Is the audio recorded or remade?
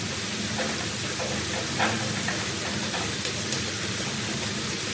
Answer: recorded